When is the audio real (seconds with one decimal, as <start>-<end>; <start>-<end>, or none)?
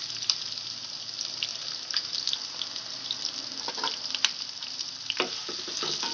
0.0-6.1